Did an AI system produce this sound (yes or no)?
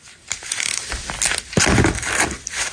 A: no